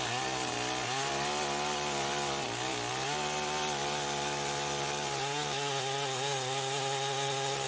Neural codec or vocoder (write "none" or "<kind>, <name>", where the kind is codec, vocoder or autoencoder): none